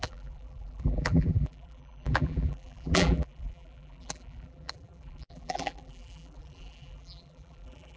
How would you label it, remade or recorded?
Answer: remade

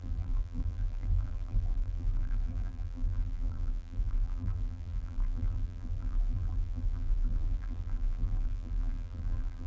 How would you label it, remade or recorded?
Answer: remade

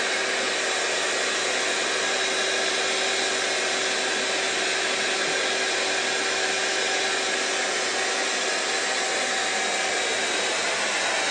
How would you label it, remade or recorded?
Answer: recorded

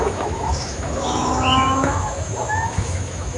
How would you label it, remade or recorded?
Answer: remade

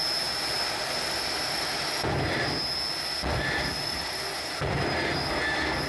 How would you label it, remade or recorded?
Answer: recorded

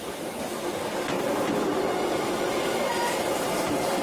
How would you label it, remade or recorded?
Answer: recorded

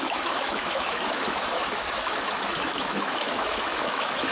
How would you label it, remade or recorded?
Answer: remade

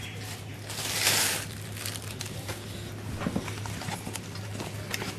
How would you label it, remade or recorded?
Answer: recorded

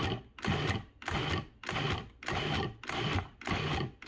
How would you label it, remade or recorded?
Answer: recorded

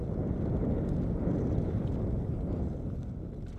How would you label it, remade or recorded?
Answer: recorded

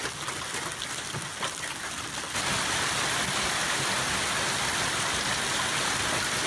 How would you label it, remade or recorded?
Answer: recorded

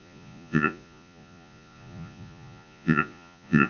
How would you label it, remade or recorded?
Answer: remade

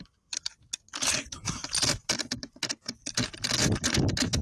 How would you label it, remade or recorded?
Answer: recorded